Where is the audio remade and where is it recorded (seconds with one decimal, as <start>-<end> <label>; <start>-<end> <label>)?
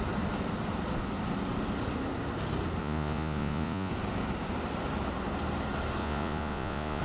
0.0-2.8 recorded; 2.8-3.9 remade; 3.9-6.0 recorded; 6.0-7.0 remade